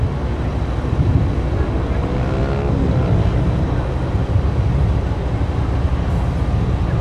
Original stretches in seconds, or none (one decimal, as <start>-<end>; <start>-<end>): 0.0-7.0